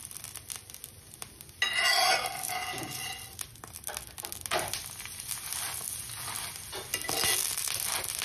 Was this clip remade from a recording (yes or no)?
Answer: no